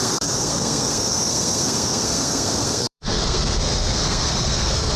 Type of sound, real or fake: fake